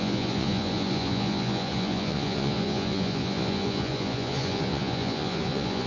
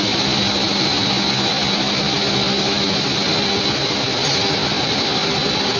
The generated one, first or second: first